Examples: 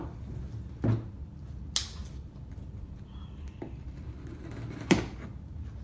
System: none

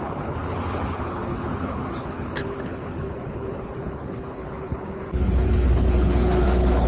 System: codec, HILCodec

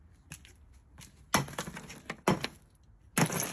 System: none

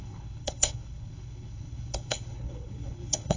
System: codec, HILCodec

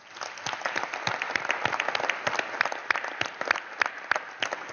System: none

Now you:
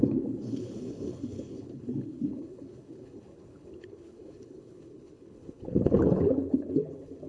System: codec, HILCodec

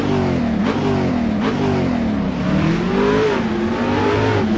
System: none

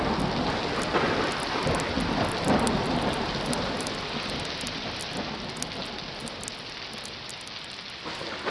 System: none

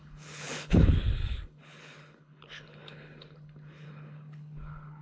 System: codec, HILCodec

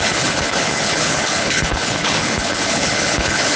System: codec, HILCodec